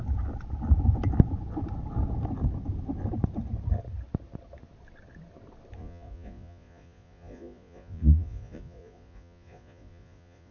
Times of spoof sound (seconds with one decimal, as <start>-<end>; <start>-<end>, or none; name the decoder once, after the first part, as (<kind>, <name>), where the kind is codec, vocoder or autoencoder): 5.8-10.5 (vocoder, Vocos)